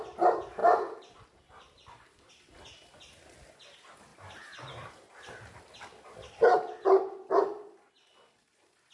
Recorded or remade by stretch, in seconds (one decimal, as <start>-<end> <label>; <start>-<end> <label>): 0.0-0.6 recorded; 0.6-2.3 remade; 2.3-4.1 recorded; 4.1-5.3 remade; 5.3-8.9 recorded